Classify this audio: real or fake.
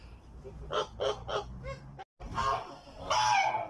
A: real